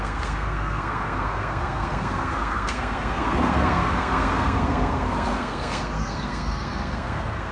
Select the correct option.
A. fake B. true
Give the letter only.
A